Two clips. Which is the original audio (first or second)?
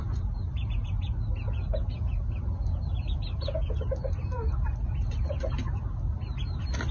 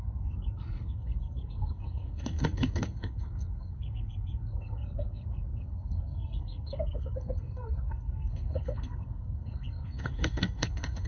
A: first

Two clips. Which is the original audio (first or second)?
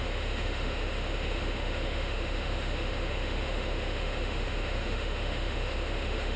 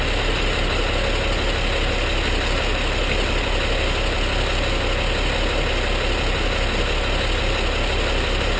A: second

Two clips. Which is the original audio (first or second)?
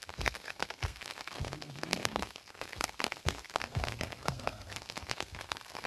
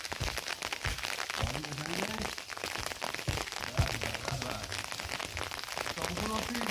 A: second